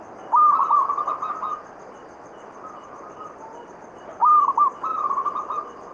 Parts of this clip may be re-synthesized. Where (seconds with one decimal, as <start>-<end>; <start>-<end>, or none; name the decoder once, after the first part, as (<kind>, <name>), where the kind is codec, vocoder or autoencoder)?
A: none